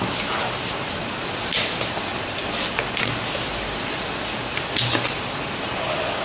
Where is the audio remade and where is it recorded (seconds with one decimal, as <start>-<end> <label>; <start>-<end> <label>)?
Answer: 0.0-6.2 recorded